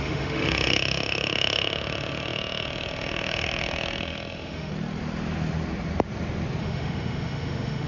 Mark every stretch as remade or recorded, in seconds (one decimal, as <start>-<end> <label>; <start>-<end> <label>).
0.0-4.7 remade; 4.7-6.6 recorded; 6.6-7.9 remade